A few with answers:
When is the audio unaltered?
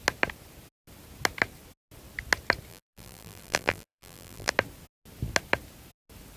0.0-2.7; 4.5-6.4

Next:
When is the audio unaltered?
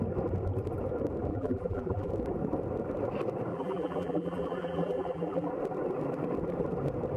0.0-1.3; 2.1-3.5; 5.5-7.2